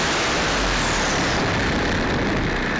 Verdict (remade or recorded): recorded